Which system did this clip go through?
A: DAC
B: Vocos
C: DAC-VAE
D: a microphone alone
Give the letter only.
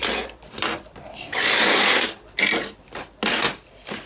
D